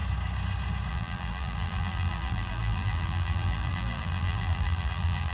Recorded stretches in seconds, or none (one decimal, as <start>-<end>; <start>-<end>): 0.0-0.9